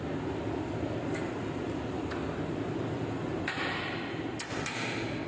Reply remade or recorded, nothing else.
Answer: recorded